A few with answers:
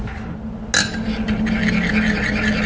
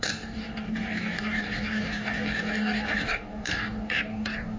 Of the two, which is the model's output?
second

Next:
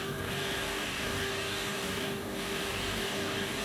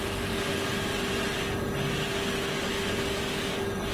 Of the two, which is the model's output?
first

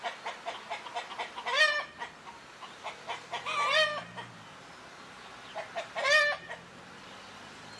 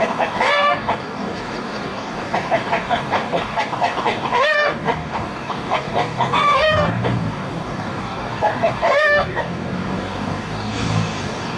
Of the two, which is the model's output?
second